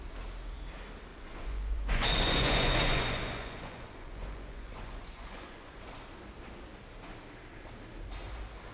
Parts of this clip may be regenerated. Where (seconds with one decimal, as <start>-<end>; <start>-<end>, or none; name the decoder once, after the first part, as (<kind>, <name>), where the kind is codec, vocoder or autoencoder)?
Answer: 1.1-5.8 (vocoder, Vocos)